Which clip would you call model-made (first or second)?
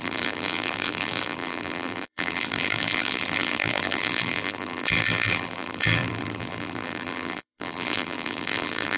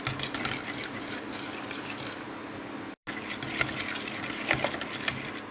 first